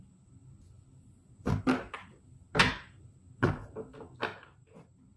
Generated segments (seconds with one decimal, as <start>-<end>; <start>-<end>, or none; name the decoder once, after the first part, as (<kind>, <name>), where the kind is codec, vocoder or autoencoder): 4.3-5.2 (vocoder, BigVGAN v2)